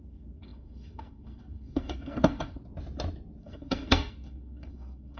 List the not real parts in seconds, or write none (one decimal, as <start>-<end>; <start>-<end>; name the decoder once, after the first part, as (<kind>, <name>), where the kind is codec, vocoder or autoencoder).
0.0-2.6 (codec, SNAC); 3.4-5.2